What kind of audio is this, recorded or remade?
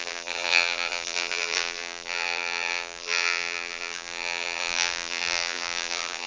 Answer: remade